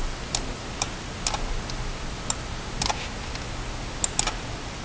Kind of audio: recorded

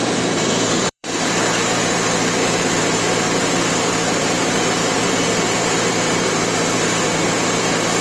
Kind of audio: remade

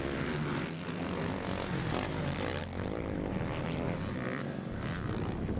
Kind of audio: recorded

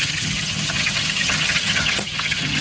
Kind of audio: remade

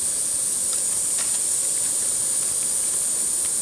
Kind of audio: recorded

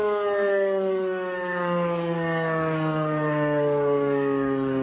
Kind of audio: remade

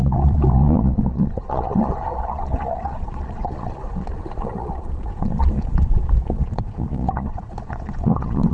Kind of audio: remade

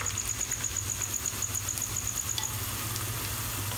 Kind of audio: recorded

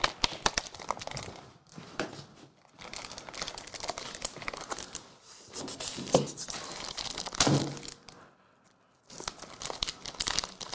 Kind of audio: recorded